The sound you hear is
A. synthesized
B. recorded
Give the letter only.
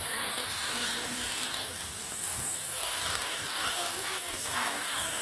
A